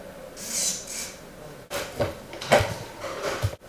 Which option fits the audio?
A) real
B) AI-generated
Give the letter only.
A